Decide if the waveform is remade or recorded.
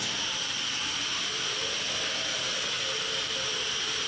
recorded